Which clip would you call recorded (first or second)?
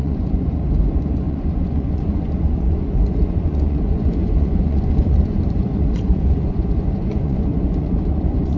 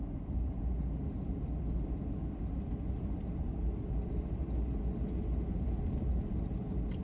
second